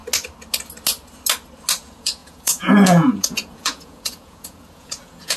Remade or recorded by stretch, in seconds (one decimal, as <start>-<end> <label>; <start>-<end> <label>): 0.0-1.8 recorded; 1.8-5.4 remade